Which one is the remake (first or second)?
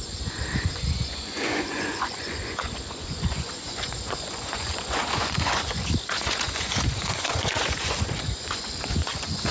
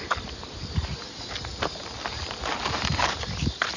first